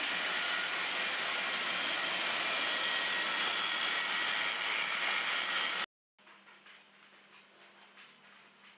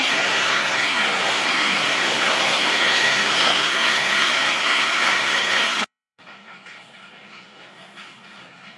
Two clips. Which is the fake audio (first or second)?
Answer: second